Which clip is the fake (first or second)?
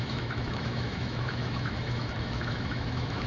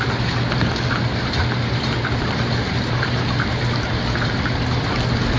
first